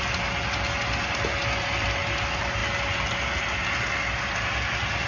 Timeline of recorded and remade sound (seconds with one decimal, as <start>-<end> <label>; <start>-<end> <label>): 0.0-5.1 recorded